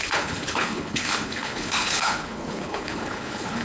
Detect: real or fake fake